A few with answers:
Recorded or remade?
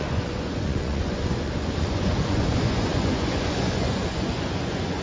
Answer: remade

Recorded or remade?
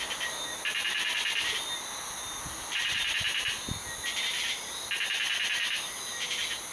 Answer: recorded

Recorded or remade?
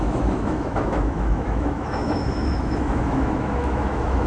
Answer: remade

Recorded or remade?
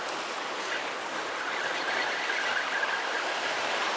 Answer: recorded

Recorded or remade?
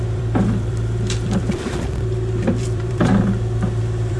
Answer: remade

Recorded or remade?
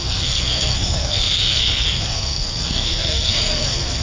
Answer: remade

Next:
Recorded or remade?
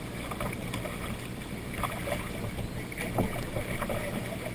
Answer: recorded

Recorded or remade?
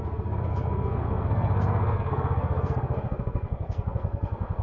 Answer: remade